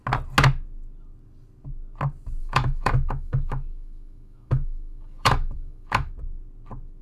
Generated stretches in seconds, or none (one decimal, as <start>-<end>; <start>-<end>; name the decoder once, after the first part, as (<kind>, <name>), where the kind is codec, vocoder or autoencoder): 2.4-6.1 (autoencoder, DAC-VAE)